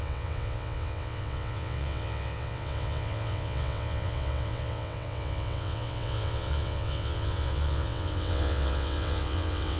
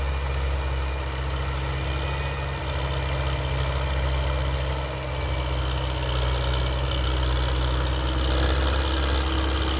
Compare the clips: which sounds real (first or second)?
second